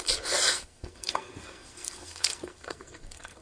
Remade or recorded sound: remade